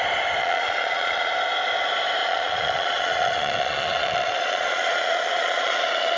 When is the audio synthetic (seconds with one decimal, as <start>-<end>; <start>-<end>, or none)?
0.4-1.3; 2.2-6.2